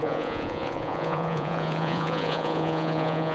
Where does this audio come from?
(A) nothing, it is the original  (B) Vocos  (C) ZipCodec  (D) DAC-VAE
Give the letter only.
B